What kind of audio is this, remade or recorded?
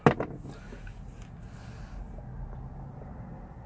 recorded